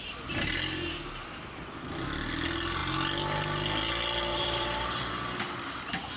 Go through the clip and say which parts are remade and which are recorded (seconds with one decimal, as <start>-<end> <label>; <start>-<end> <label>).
0.0-4.3 recorded; 4.3-5.1 remade; 5.1-6.2 recorded